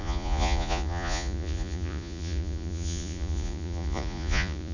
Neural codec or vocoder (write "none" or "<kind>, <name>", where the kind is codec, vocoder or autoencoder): vocoder, Vocos